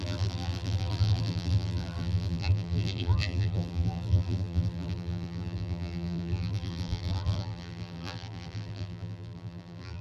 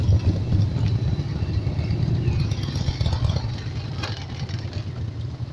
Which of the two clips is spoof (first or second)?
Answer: first